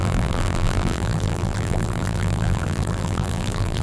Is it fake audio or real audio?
fake